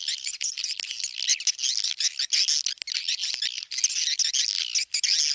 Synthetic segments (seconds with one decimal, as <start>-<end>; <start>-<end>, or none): none